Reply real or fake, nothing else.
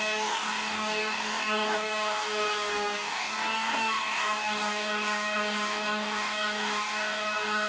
fake